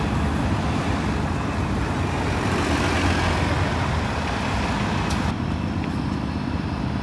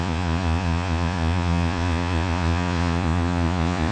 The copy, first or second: second